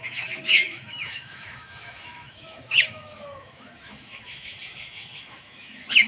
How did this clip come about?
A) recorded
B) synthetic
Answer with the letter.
B